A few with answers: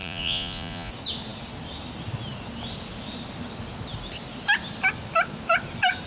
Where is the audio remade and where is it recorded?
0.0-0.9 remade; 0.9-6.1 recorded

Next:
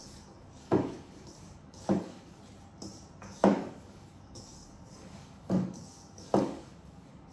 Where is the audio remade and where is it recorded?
0.0-2.4 remade; 2.4-3.2 recorded; 3.2-7.3 remade

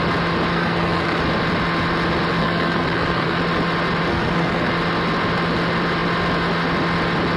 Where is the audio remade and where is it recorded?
0.0-0.5 recorded; 0.5-1.2 remade; 1.2-2.4 recorded; 2.4-3.4 remade; 3.4-4.1 recorded; 4.1-4.7 remade; 4.7-7.4 recorded

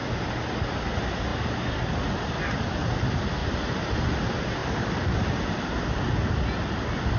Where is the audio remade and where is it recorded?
0.0-4.6 recorded; 4.6-6.1 remade; 6.1-7.2 recorded

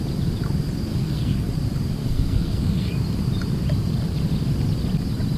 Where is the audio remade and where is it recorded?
0.0-0.9 recorded; 0.9-1.5 remade; 1.5-2.0 recorded; 2.0-2.9 remade; 2.9-5.4 recorded

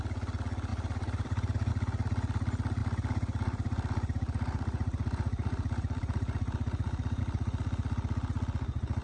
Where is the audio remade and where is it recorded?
0.0-0.7 recorded; 0.7-1.7 remade; 1.7-2.8 recorded; 2.8-7.2 remade; 7.2-9.0 recorded

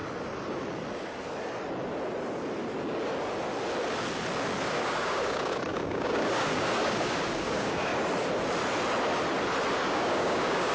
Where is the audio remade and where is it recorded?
0.0-4.7 recorded; 4.7-7.9 remade; 7.9-9.9 recorded; 9.9-10.7 remade